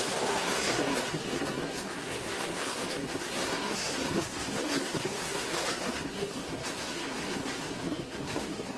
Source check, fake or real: fake